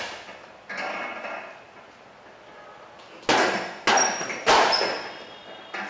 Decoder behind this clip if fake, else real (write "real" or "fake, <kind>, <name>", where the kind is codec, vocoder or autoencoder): real